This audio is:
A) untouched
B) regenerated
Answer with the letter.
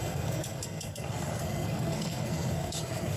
B